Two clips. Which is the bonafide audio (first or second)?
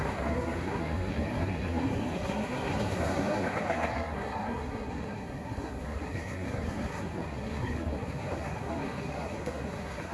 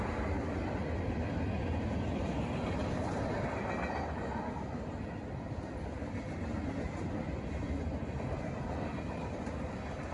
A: second